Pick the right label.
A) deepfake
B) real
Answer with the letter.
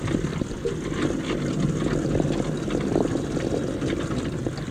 B